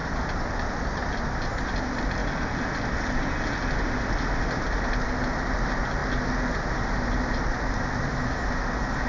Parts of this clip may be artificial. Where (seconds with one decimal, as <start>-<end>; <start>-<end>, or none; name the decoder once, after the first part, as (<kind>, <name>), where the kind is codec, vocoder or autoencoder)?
none